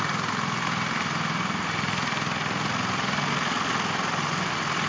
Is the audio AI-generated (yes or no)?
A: no